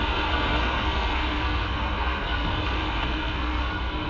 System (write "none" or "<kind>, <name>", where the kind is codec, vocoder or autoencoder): codec, SNAC